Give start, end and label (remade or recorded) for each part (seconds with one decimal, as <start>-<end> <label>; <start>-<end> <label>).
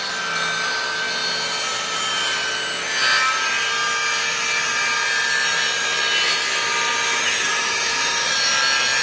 0.0-7.1 recorded; 7.1-8.3 remade; 8.3-9.0 recorded